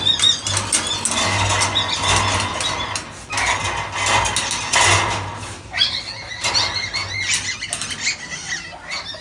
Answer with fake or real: real